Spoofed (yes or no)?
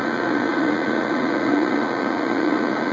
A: yes